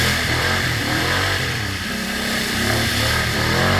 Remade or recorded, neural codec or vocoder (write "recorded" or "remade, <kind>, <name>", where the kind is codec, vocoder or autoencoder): remade, vocoder, BigVGAN v2